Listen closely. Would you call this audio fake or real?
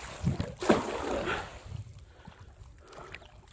real